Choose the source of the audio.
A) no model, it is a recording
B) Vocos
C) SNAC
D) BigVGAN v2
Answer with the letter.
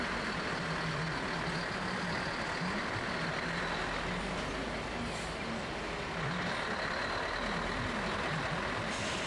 A